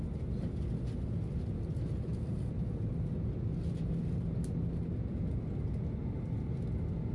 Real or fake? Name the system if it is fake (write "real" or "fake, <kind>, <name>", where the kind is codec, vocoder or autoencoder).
real